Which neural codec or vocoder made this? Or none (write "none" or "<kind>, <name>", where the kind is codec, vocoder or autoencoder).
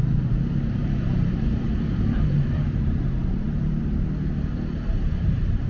vocoder, BigVGAN v2